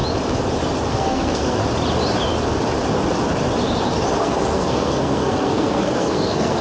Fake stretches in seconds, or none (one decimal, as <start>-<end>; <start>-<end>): 0.9-1.6; 4.2-6.6